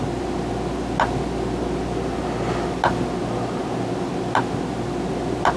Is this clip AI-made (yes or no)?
no